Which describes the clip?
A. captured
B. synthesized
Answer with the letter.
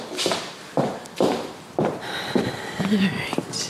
A